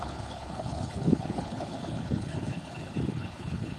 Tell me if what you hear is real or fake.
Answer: fake